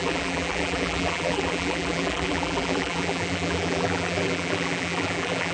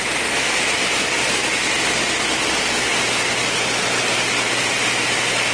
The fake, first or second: first